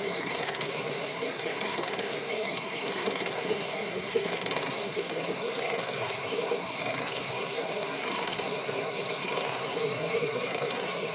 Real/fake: fake